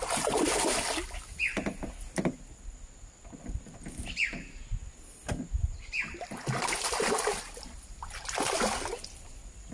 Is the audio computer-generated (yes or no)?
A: no